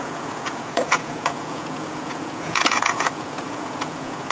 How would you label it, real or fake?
fake